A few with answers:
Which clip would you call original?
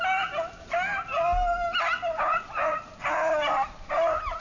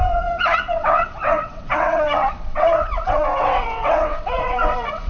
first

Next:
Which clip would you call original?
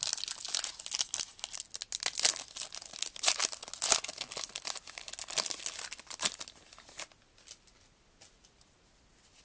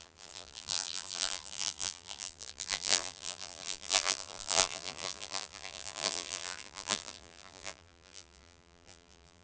first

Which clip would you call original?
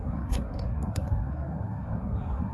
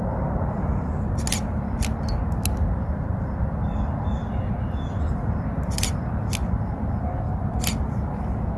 second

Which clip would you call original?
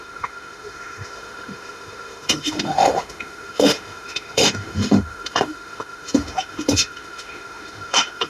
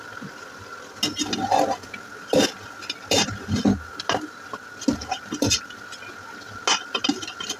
second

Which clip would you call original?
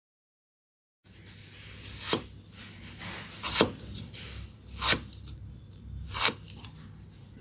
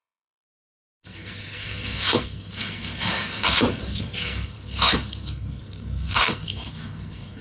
first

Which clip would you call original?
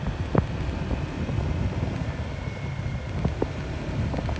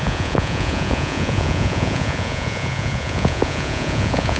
first